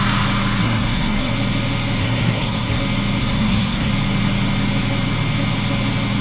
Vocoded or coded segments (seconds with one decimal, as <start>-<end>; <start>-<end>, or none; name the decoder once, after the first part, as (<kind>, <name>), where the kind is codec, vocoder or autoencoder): 0.6-1.3 (codec, SNAC); 2.0-2.8; 3.2-3.9